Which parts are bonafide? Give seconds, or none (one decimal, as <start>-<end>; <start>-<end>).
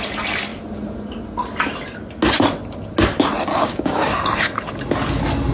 0.0-3.5; 4.1-5.5